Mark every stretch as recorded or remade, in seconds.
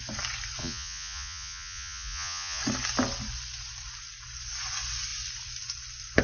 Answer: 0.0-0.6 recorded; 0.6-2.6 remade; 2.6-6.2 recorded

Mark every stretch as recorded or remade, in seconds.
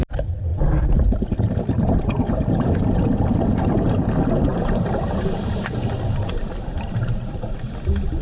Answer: 0.0-4.5 recorded; 4.5-6.3 remade; 6.3-6.7 recorded; 6.7-7.6 remade; 7.6-8.2 recorded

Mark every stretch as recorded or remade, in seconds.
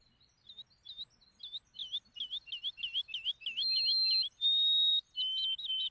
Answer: 0.0-5.9 recorded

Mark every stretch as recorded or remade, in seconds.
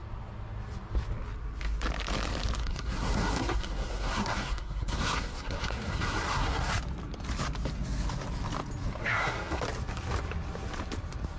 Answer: 0.0-2.6 recorded; 2.6-6.7 remade; 6.7-9.0 recorded; 9.0-9.6 remade; 9.6-11.4 recorded